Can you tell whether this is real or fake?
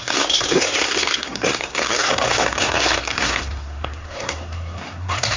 fake